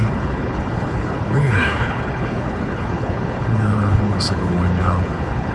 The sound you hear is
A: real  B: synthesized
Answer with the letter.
B